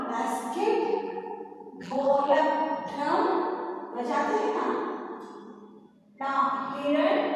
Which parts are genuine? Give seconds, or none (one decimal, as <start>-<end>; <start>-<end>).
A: 0.0-0.9; 2.4-7.4